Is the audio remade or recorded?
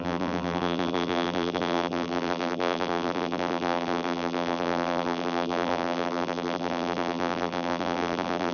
remade